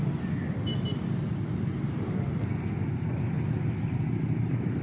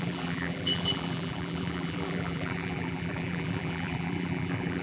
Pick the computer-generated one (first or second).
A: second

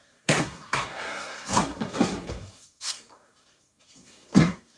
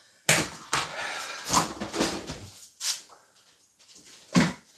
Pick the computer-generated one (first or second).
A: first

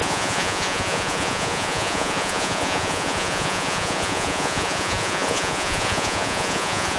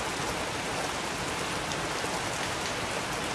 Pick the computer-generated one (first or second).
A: first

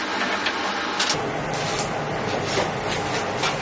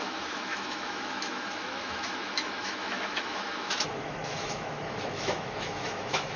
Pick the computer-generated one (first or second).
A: second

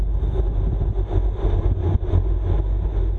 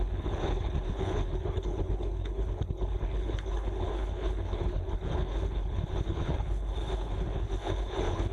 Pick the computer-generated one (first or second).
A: second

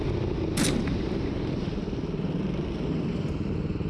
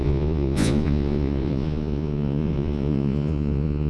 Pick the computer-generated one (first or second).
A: second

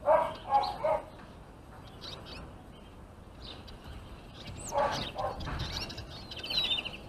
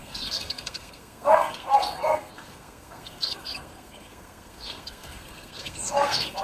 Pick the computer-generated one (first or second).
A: second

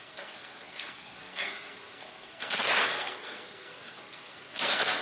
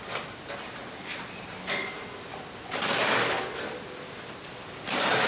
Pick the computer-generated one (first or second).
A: first